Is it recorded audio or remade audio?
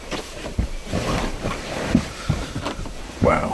remade